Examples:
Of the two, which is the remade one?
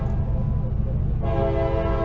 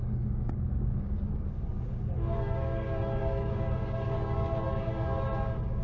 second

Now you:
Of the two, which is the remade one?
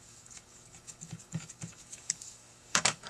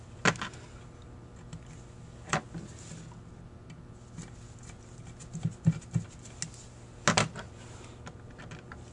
first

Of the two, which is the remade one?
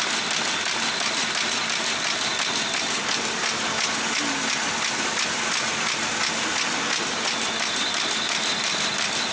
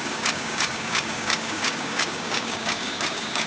second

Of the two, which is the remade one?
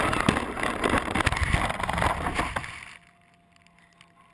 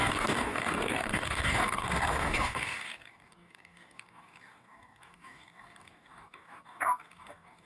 second